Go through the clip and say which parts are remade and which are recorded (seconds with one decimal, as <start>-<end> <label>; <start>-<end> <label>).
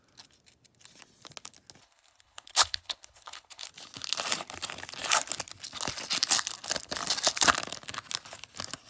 0.0-1.8 recorded; 1.8-3.7 remade; 3.7-8.9 recorded